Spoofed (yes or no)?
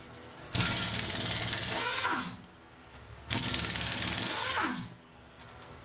yes